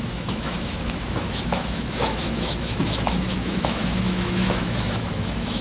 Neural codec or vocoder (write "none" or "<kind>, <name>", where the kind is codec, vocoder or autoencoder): autoencoder, DAC-VAE